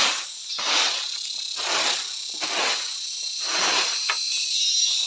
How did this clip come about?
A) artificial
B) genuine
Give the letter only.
B